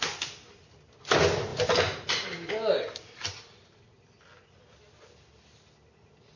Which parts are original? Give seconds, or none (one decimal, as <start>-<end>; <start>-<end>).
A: 0.0-6.4